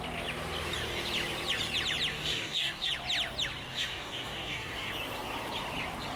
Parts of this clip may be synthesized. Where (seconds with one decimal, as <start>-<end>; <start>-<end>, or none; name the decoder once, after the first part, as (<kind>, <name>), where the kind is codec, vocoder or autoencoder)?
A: 2.1-2.9 (codec, DAC); 3.7-4.9